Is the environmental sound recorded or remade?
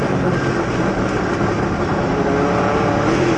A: recorded